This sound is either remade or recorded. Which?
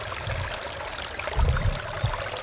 recorded